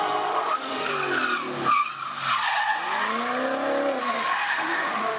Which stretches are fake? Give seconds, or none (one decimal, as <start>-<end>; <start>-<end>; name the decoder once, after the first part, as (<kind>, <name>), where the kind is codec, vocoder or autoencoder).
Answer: 0.0-0.9 (autoencoder, DAC-VAE); 4.0-5.2